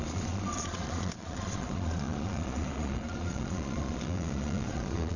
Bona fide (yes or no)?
no